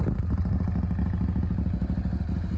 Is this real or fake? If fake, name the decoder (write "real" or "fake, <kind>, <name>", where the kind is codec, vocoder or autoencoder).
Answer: real